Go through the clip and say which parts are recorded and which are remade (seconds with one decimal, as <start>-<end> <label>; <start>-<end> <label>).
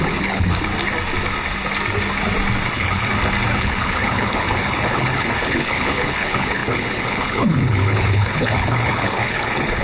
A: 0.0-0.7 remade; 0.7-2.7 recorded; 2.7-3.1 remade; 3.1-3.6 recorded; 3.6-9.8 remade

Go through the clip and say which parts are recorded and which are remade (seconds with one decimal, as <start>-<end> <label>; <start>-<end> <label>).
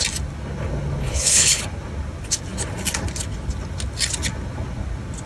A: 0.0-1.0 recorded; 1.0-1.6 remade; 1.6-5.3 recorded